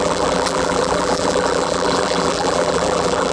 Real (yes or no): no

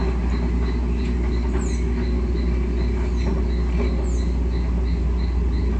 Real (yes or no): yes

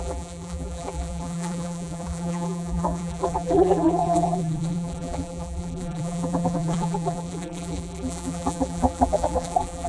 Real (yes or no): no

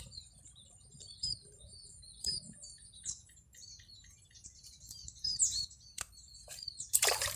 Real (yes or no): no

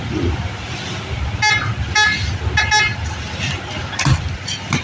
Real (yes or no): yes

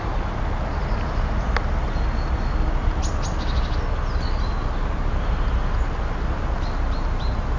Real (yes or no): yes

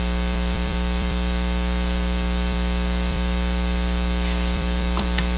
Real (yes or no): no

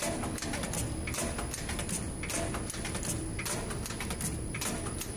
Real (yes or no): yes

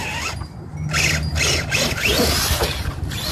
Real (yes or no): yes